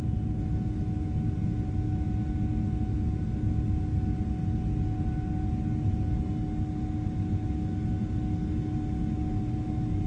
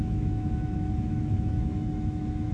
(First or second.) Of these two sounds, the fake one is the second